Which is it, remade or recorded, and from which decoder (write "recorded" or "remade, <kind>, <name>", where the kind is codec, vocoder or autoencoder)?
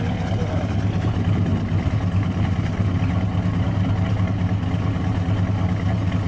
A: recorded